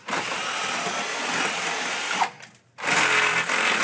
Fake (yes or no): no